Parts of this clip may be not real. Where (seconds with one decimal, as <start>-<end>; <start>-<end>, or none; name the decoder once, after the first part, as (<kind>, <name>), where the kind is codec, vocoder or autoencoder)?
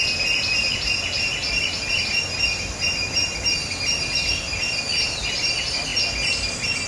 none